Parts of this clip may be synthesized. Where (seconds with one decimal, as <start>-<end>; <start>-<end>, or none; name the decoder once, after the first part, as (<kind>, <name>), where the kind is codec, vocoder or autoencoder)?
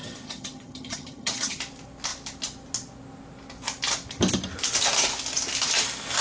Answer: 0.0-1.6 (vocoder, HiFi-GAN)